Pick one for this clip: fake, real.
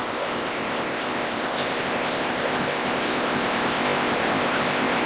fake